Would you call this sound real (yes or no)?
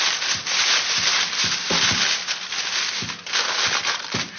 yes